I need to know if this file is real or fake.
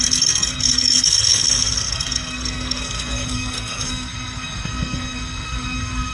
fake